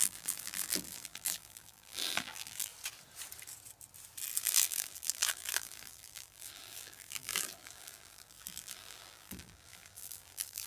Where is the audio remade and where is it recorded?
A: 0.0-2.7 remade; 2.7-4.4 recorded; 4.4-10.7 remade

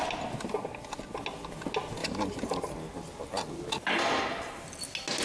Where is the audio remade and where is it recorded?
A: 0.0-5.2 recorded

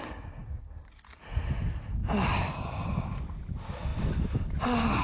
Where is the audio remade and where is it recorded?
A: 0.0-0.4 recorded; 0.4-1.0 remade; 1.0-2.0 recorded; 2.0-3.3 remade; 3.3-3.9 recorded; 3.9-5.0 remade

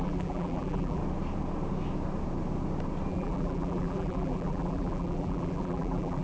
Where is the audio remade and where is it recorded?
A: 0.0-1.0 remade; 1.0-3.1 recorded; 3.1-6.2 remade

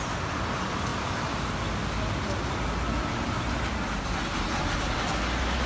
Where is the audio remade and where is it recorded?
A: 0.0-0.9 recorded; 0.9-1.6 remade; 1.6-5.7 recorded

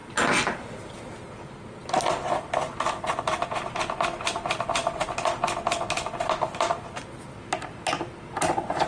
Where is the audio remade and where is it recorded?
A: 0.0-8.9 recorded